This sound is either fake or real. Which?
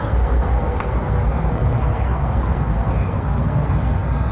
fake